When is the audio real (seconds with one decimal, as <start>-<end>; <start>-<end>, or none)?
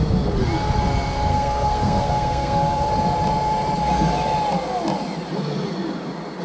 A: 0.0-1.3; 2.9-6.4